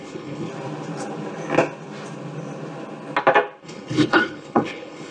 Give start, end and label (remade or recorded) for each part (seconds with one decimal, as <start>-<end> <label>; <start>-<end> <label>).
0.0-0.5 remade; 0.5-3.6 recorded; 3.6-5.1 remade